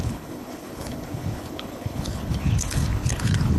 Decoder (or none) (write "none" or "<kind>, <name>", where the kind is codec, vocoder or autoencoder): codec, HILCodec